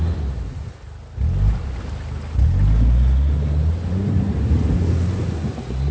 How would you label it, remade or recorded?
recorded